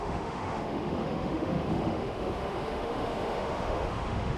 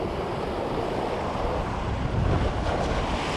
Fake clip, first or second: first